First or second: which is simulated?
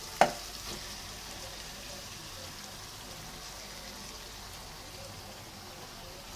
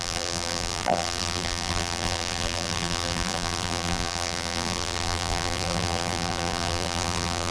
second